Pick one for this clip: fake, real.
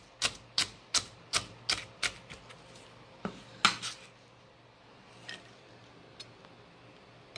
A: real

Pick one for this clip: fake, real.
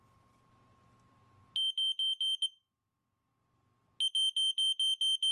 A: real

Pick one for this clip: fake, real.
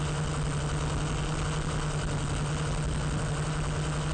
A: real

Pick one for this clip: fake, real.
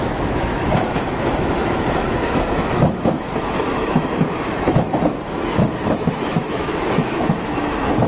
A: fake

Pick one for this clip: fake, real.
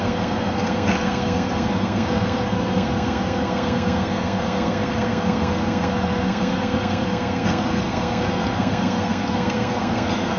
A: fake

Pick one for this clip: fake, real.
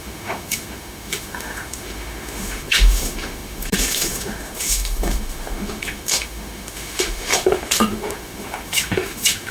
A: fake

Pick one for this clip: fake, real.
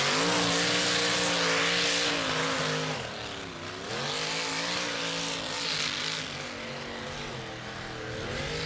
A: real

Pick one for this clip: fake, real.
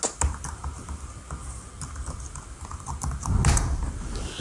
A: real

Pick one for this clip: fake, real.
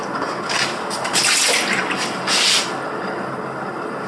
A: real